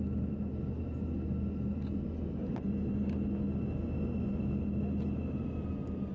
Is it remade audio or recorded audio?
recorded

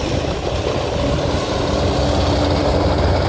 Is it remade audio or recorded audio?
recorded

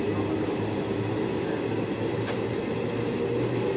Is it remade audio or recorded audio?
recorded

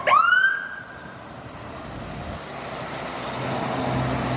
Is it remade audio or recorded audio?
recorded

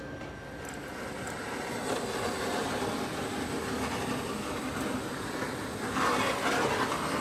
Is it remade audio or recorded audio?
recorded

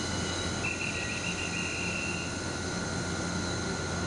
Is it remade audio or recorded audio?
recorded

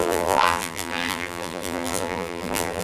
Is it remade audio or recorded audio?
remade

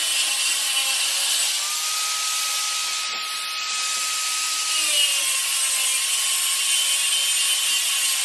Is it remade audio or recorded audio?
recorded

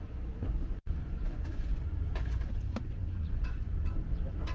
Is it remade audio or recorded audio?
remade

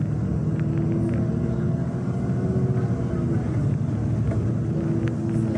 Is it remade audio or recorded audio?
recorded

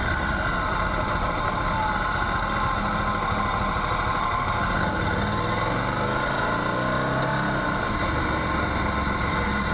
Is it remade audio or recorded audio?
recorded